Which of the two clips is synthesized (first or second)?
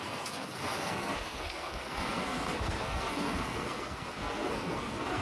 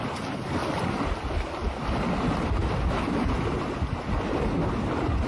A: first